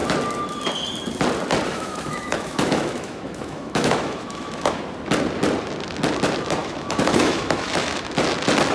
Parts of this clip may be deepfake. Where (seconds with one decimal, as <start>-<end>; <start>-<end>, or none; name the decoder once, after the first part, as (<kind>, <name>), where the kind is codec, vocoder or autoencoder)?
1.7-4.8 (autoencoder, DAC-VAE); 6.6-8.1

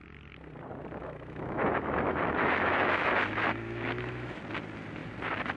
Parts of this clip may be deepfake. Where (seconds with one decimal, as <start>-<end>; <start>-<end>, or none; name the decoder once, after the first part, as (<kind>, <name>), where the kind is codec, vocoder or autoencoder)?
1.0-4.4 (autoencoder, DAC-VAE)

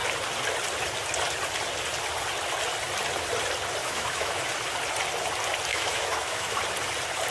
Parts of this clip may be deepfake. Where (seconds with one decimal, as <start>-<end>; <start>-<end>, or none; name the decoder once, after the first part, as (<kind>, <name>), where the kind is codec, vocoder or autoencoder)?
3.8-4.4 (autoencoder, DAC-VAE); 5.7-6.6

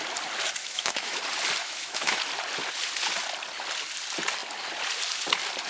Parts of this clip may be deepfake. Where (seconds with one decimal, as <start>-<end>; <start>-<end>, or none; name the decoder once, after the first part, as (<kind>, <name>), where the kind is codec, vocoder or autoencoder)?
0.6-1.2 (autoencoder, DAC-VAE); 1.6-2.2

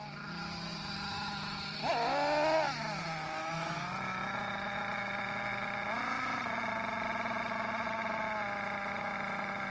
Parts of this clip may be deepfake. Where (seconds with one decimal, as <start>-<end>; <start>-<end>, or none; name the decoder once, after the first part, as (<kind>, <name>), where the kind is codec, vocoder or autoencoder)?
3.4-3.9 (autoencoder, DAC-VAE)

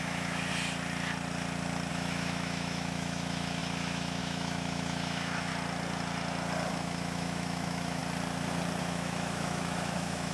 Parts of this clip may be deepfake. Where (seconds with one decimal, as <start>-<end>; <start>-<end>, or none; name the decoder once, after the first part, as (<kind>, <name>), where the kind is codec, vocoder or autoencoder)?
0.0-0.5 (autoencoder, DAC-VAE); 1.9-5.5; 6.7-8.0; 8.8-10.3

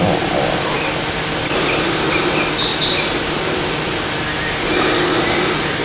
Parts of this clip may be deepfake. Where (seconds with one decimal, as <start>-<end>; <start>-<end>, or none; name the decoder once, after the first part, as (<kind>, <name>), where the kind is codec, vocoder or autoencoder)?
none